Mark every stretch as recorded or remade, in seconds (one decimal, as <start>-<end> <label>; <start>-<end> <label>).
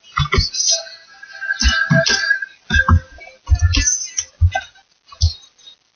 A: 0.0-6.0 recorded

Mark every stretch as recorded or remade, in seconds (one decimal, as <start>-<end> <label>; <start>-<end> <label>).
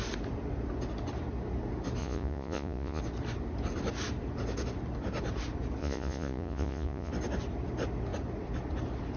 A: 0.0-2.0 recorded; 2.0-3.0 remade; 3.0-5.8 recorded; 5.8-7.1 remade; 7.1-9.2 recorded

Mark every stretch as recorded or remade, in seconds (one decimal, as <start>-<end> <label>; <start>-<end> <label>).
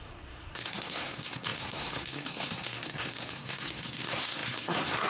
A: 0.0-5.1 remade